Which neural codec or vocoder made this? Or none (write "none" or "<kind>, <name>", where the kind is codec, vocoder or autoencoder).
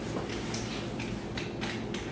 none